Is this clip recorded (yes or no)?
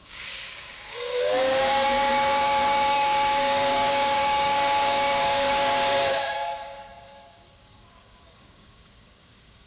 no